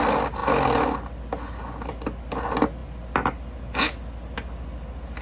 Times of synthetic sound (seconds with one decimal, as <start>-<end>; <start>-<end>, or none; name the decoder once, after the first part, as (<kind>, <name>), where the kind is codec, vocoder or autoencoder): none